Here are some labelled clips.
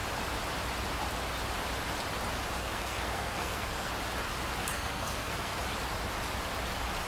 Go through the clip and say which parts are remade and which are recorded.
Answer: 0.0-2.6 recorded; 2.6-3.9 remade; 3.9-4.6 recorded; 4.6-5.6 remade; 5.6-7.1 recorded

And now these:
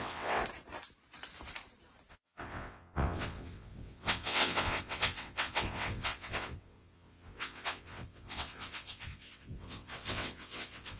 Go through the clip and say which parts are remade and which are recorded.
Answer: 0.0-0.4 remade; 0.4-2.1 recorded; 2.1-11.0 remade

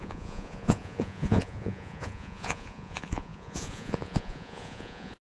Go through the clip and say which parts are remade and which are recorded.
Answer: 0.0-5.4 remade